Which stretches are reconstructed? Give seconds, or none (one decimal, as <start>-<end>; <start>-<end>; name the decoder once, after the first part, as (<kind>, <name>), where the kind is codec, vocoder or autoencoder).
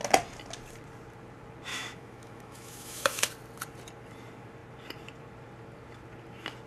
1.7-3.2 (autoencoder, DAC-VAE)